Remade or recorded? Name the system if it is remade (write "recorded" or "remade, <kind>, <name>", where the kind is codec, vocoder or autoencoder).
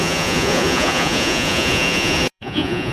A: remade, vocoder, Vocos